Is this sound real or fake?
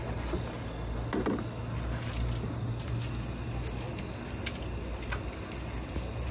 real